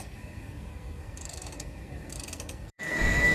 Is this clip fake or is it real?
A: fake